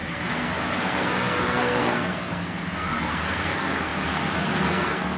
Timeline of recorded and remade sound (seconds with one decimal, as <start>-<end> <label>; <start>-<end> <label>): 0.0-5.2 remade